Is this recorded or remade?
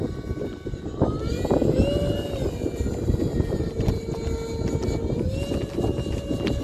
recorded